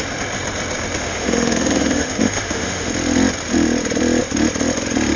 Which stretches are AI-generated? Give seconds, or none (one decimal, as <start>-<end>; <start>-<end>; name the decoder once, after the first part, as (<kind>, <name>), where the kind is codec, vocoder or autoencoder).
1.0-2.9 (autoencoder, DAC-VAE)